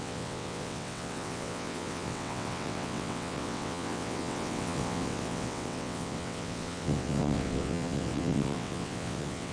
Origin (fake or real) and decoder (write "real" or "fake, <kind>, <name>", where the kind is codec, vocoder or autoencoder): fake, vocoder, WaveNeXt